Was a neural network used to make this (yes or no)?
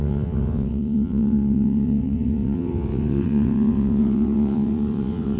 yes